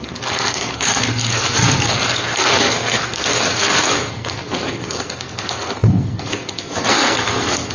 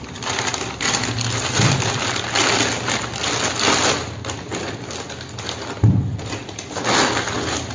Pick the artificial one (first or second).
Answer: first